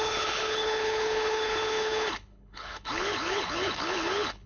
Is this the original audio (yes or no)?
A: no